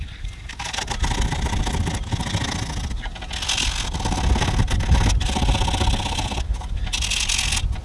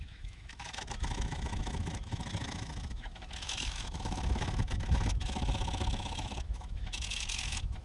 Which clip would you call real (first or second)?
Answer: first